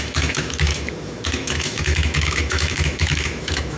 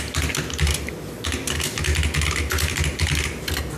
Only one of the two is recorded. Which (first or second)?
second